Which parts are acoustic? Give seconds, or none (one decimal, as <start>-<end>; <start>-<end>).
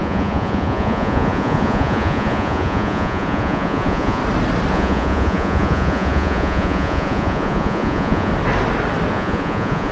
4.2-4.7; 8.3-9.1